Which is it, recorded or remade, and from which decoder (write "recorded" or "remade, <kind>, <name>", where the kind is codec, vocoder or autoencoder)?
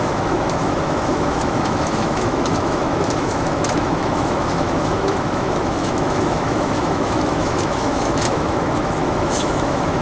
remade, autoencoder, DAC-VAE